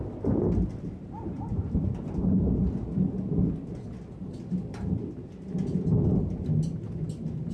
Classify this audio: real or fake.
real